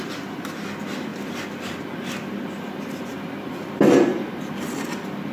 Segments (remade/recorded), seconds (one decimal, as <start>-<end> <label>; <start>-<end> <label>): 0.0-5.3 recorded